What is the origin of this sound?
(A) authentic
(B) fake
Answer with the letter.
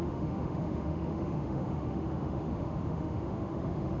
B